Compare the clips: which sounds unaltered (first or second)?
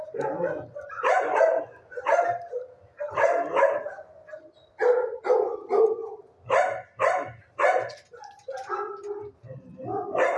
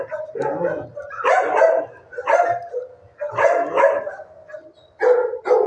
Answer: second